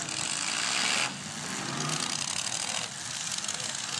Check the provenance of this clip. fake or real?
real